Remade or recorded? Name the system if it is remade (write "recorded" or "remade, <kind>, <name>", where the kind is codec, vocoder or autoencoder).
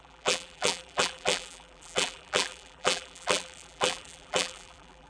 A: remade, vocoder, BigVGAN v2